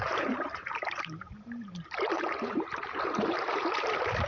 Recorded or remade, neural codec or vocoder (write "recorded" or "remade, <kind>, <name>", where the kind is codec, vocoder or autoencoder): remade, vocoder, BigVGAN v2